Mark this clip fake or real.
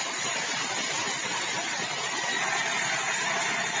real